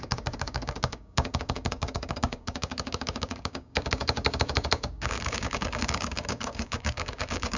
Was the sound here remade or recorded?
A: remade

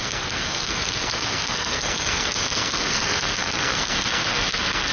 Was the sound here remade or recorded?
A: remade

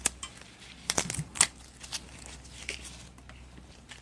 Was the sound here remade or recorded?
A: recorded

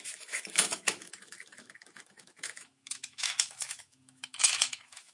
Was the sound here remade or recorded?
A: remade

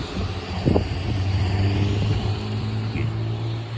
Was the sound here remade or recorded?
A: recorded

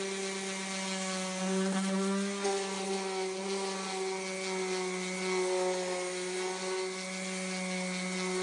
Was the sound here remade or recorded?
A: recorded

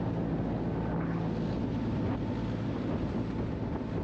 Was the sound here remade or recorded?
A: recorded